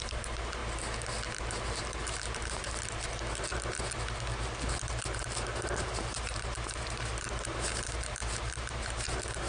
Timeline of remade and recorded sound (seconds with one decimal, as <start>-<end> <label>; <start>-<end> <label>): 0.0-0.6 remade; 0.6-1.4 recorded; 1.4-2.6 remade; 2.6-5.2 recorded; 5.2-9.5 remade